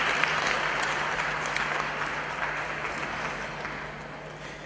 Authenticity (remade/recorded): recorded